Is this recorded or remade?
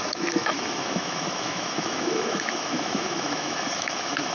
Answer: remade